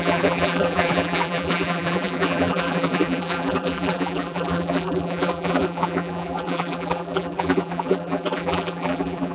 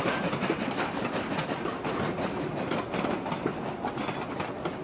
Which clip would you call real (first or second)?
second